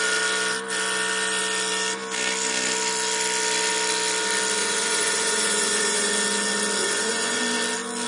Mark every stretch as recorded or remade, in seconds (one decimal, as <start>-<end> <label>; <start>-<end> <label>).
0.0-4.6 recorded; 4.6-6.1 remade; 6.1-6.8 recorded; 6.8-7.4 remade; 7.4-8.1 recorded